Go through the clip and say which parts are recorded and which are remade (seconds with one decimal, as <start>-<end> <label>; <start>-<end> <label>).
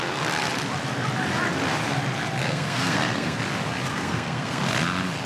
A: 0.0-2.4 recorded; 2.4-3.4 remade; 3.4-3.9 recorded; 3.9-4.6 remade; 4.6-5.3 recorded